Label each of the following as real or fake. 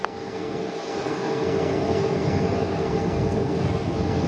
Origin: fake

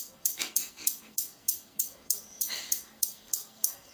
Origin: fake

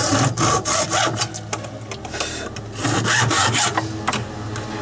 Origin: real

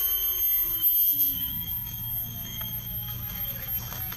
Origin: fake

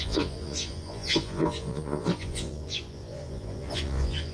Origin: fake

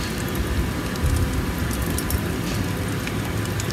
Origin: real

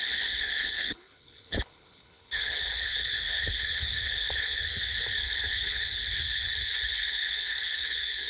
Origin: fake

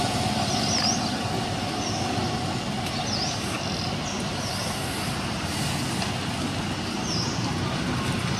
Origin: real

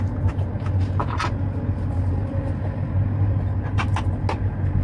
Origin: real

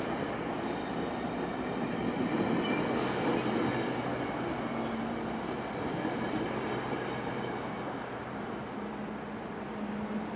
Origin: real